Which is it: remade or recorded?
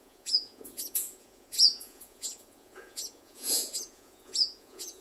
remade